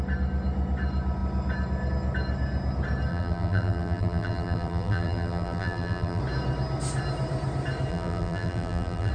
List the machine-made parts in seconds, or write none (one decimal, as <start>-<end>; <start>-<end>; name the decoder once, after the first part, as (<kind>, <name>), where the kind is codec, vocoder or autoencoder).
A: 3.1-6.2 (vocoder, BigVGAN v2); 7.9-9.1